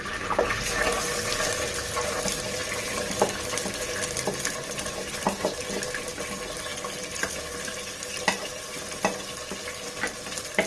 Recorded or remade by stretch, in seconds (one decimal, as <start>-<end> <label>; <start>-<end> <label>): 0.0-10.7 recorded